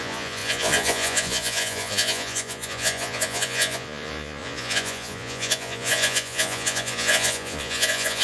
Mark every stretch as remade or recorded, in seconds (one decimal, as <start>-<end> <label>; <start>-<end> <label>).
0.0-8.2 remade